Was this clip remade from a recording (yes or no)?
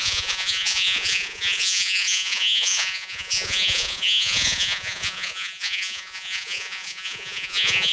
yes